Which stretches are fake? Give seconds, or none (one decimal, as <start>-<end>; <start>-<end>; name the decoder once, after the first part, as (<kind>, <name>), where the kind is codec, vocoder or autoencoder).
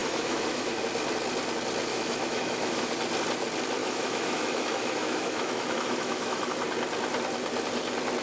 0.0-0.8 (autoencoder, DAC-VAE); 1.9-2.9; 3.8-6.5